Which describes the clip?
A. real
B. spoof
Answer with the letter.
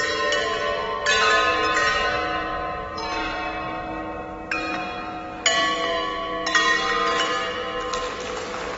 A